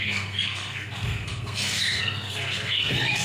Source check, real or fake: fake